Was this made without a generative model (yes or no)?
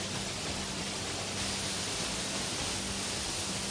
yes